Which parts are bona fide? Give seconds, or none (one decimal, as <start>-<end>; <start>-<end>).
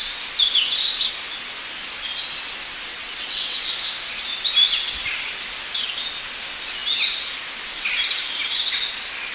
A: 0.0-2.9; 3.6-9.3